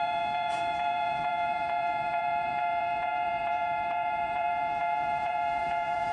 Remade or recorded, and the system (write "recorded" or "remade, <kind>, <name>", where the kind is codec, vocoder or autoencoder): remade, vocoder, Vocos